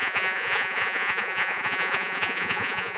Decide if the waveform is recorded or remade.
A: remade